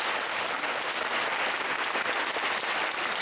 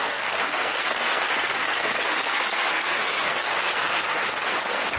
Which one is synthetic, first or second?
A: second